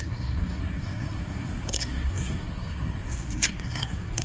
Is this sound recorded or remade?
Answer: remade